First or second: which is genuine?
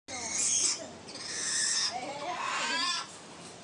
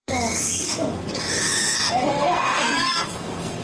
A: first